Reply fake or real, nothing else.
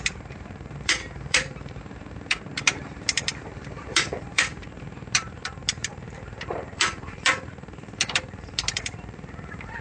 fake